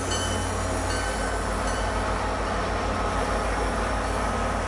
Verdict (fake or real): real